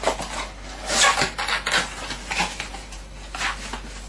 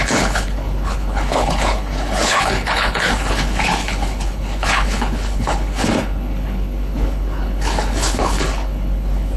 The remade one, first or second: second